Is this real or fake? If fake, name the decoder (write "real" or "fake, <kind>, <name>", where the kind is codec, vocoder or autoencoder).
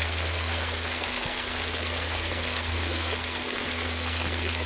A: fake, codec, SNAC